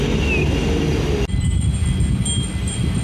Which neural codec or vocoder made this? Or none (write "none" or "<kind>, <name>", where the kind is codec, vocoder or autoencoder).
none